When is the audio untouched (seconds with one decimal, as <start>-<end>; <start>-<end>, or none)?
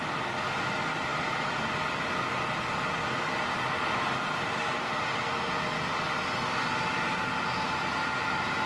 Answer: 0.0-4.6; 5.3-8.7